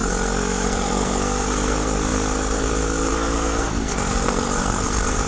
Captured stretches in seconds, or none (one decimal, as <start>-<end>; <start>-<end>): none